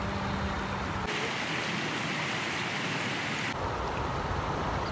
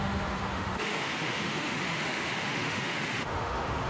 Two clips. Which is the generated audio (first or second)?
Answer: second